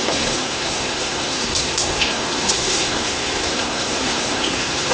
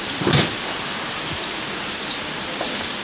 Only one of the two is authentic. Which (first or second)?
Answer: second